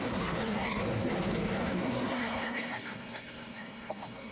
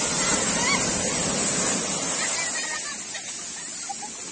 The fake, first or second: first